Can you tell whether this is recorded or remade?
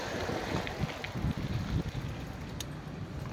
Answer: recorded